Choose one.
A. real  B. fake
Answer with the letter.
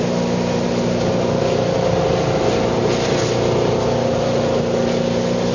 A